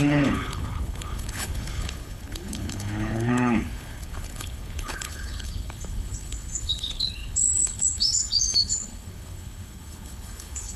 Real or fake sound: fake